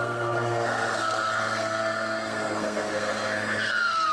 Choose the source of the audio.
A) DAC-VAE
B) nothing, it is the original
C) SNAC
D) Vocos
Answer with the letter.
C